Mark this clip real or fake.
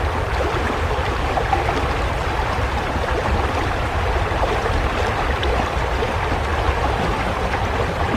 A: fake